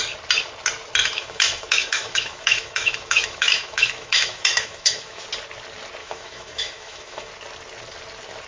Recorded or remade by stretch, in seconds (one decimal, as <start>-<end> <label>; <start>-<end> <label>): 0.0-1.0 recorded; 1.0-5.2 remade; 5.2-6.0 recorded; 6.0-7.3 remade; 7.3-8.5 recorded